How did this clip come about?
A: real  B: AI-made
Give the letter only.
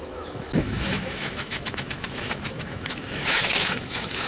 B